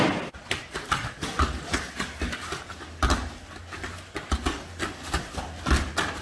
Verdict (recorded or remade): recorded